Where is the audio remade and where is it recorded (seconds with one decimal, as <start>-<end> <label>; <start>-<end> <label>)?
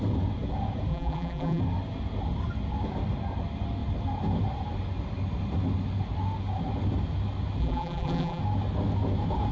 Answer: 0.0-0.9 recorded; 0.9-1.6 remade; 1.6-7.6 recorded; 7.6-8.4 remade; 8.4-9.5 recorded